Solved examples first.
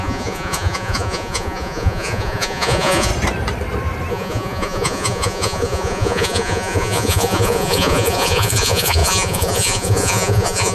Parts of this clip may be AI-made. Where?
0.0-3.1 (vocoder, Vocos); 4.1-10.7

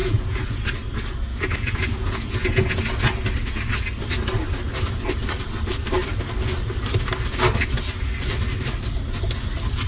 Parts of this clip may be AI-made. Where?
0.0-0.7 (vocoder, Vocos); 1.3-2.8

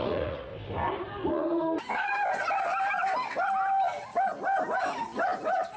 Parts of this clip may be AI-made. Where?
0.0-0.5 (vocoder, Vocos); 1.3-2.1

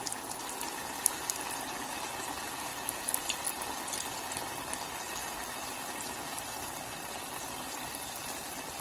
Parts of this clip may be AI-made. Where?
none